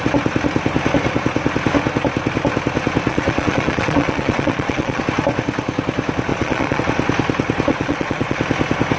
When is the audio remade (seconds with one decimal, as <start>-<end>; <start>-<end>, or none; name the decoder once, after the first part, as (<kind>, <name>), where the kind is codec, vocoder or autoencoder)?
3.1-5.0 (vocoder, Vocos); 6.3-6.8; 7.7-8.4